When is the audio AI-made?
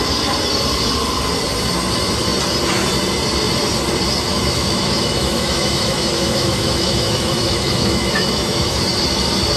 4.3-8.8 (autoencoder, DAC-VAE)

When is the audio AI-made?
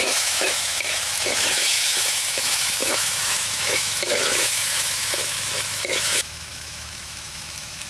0.0-7.9 (autoencoder, DAC-VAE)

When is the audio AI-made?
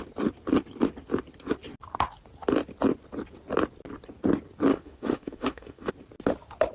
4.7-5.9 (autoencoder, DAC-VAE)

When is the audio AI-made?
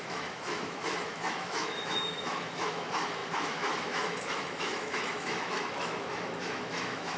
0.0-7.2 (autoencoder, DAC-VAE)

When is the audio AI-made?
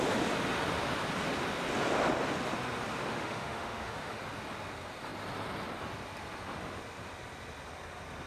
3.1-4.2 (autoencoder, DAC-VAE)